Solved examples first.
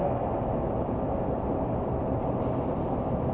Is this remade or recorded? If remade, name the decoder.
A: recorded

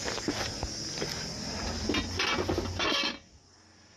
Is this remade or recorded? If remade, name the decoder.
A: recorded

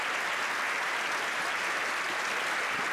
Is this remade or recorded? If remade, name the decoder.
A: recorded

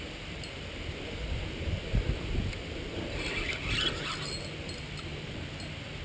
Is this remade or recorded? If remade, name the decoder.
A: recorded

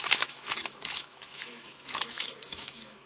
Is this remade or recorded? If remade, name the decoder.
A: remade, autoencoder, DAC-VAE